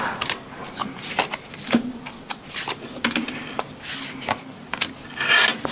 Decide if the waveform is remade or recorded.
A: recorded